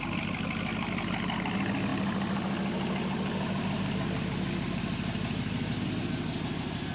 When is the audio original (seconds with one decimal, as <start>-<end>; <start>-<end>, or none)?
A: 0.0-6.9